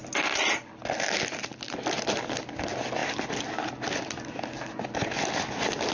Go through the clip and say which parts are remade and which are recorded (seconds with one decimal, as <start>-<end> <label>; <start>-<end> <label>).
0.0-0.8 remade; 0.8-3.0 recorded; 3.0-4.0 remade; 4.0-5.9 recorded